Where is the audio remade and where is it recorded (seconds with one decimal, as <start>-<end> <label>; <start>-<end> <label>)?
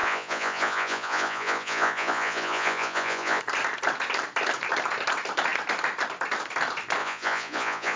0.0-3.4 remade; 3.4-7.0 recorded; 7.0-8.0 remade